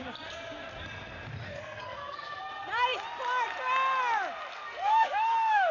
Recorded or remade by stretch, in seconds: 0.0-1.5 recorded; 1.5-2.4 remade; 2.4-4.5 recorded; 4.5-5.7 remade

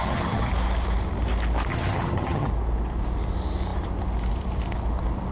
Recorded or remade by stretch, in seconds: 0.0-0.5 remade; 0.5-1.7 recorded; 1.7-2.5 remade; 2.5-5.3 recorded